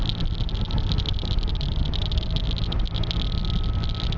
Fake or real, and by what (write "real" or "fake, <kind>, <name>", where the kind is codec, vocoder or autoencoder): real